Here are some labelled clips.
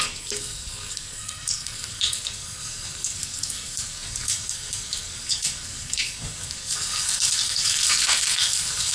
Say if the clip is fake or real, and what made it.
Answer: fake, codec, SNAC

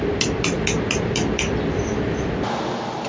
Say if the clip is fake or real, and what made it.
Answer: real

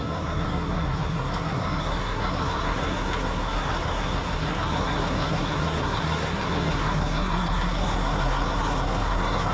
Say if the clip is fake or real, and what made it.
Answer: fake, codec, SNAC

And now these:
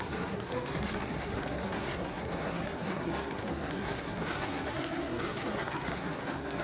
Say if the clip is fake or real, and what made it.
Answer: fake, codec, SNAC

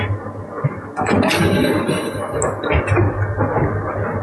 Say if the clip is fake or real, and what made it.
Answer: real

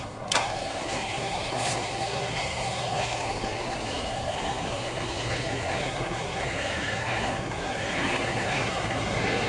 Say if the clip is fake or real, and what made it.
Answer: fake, codec, SNAC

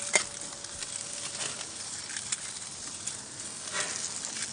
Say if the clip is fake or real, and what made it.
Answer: real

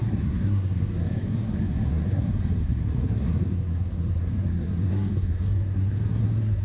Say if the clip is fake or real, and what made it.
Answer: fake, codec, SNAC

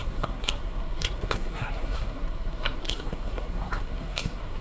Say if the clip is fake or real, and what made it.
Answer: fake, codec, SNAC